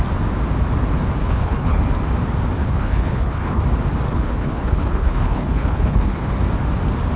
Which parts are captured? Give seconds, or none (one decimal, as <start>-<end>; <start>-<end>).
0.0-1.2; 1.8-2.6; 3.6-4.1; 6.3-7.2